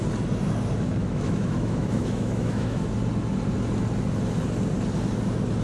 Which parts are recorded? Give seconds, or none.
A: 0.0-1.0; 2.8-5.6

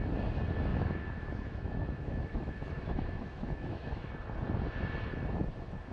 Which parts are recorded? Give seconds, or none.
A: 0.0-0.7; 4.1-5.9

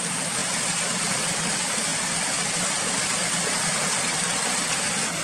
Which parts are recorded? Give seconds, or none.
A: 0.0-5.2

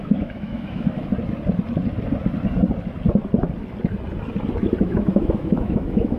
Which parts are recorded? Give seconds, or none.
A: 1.1-4.8